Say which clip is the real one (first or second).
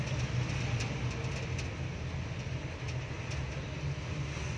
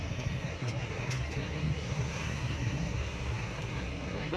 first